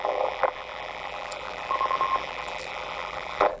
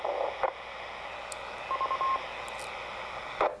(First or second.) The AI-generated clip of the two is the first